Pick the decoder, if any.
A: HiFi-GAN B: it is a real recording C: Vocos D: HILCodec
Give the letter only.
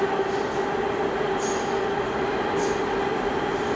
B